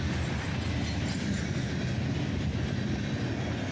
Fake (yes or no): no